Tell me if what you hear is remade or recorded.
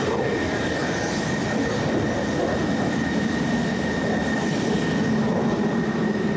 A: recorded